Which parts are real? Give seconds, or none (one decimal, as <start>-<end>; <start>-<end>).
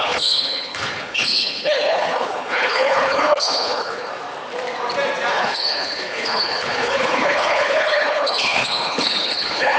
4.1-5.3